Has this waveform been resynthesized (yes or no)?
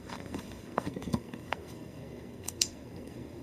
yes